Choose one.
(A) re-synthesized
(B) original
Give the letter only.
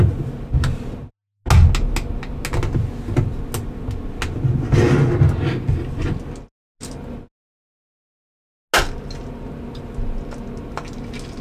B